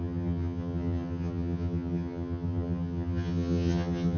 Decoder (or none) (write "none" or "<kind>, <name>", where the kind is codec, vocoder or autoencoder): vocoder, HiFi-GAN